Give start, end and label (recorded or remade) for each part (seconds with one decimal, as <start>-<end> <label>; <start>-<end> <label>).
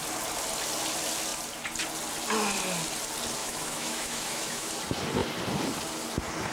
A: 0.0-3.4 recorded; 3.4-4.7 remade; 4.7-6.5 recorded